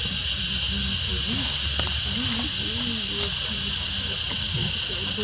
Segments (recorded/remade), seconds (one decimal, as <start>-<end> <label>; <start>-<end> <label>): 0.0-5.2 recorded